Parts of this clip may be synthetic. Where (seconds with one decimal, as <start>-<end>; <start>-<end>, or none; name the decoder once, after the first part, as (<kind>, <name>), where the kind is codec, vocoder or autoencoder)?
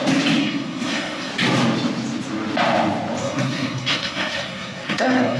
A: 0.4-1.3 (codec, SNAC); 3.2-5.4